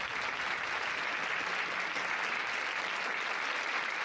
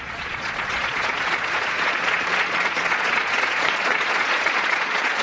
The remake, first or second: second